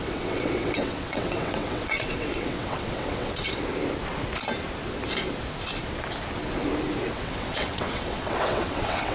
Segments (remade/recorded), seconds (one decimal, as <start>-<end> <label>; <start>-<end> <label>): 0.0-3.7 remade; 3.7-7.1 recorded; 7.1-9.1 remade

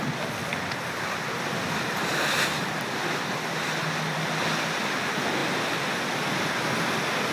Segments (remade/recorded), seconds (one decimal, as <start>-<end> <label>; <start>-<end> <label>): 0.0-7.3 recorded

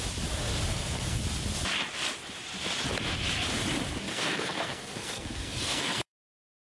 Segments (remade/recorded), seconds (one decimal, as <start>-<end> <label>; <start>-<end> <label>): 0.0-0.7 recorded; 0.7-1.2 remade; 1.2-4.1 recorded; 4.1-6.2 remade; 6.2-6.7 recorded

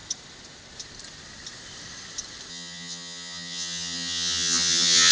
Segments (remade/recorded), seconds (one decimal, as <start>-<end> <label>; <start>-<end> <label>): 0.0-2.5 recorded; 2.5-5.1 remade

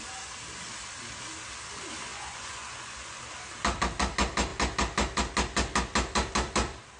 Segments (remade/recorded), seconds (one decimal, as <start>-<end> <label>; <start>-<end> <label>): 0.0-2.1 recorded; 2.1-3.2 remade; 3.2-7.0 recorded

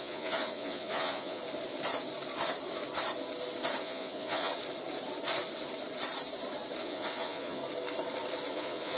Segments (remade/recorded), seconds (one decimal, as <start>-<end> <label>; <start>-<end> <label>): 0.0-1.4 remade; 1.4-3.8 recorded; 3.8-4.5 remade; 4.5-6.8 recorded; 6.8-7.6 remade; 7.6-8.5 recorded; 8.5-9.0 remade